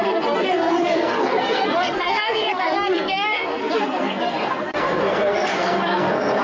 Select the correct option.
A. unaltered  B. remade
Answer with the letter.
B